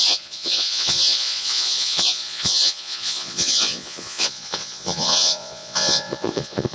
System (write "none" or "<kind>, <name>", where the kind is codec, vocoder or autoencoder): vocoder, Vocos